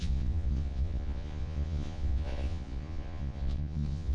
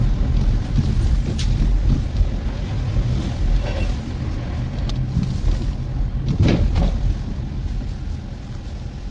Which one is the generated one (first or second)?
first